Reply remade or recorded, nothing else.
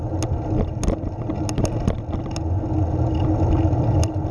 recorded